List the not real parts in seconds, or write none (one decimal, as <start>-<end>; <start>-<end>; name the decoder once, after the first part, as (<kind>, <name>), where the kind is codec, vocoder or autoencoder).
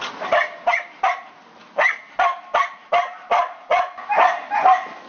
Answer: none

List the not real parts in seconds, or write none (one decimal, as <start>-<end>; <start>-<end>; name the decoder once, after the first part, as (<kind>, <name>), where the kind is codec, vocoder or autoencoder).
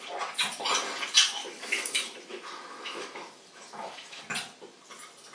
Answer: 1.4-4.2 (autoencoder, DAC-VAE)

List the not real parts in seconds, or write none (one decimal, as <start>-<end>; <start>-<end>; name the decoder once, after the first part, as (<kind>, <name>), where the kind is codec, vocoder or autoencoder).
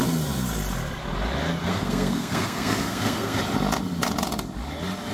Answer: 1.6-3.4 (codec, SNAC)